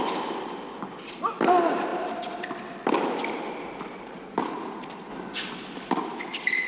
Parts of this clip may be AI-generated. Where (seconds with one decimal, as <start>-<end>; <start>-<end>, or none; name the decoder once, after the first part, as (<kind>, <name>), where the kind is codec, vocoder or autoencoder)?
none

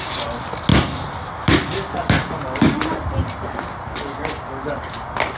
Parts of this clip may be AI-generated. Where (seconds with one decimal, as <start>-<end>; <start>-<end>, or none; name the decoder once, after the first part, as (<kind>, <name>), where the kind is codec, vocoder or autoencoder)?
none